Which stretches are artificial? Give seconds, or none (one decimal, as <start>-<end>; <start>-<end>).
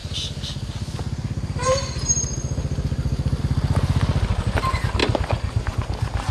none